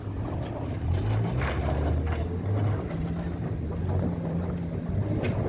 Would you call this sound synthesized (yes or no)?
no